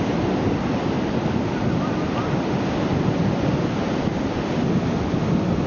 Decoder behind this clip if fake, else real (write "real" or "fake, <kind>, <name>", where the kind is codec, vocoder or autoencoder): real